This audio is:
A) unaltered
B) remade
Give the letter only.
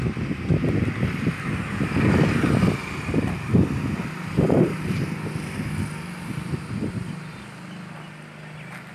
A